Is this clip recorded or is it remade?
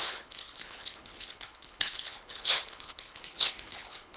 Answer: remade